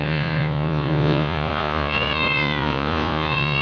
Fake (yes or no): yes